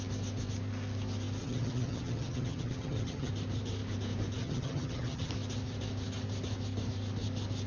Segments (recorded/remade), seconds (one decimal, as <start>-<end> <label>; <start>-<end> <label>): 0.0-1.4 recorded; 1.4-3.3 remade; 3.3-4.4 recorded; 4.4-5.3 remade; 5.3-7.7 recorded